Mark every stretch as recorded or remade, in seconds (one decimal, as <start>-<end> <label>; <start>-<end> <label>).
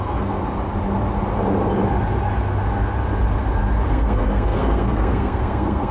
0.0-0.4 remade; 0.4-3.9 recorded; 3.9-5.9 remade